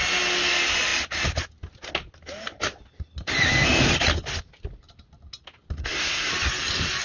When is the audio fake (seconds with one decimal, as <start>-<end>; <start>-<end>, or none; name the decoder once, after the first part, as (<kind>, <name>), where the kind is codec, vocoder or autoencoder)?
5.8-6.3 (codec, SNAC)